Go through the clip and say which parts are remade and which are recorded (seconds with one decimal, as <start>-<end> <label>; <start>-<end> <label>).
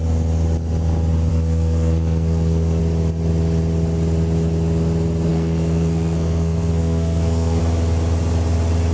0.0-1.3 recorded; 1.3-2.8 remade; 2.8-5.3 recorded; 5.3-7.6 remade; 7.6-8.9 recorded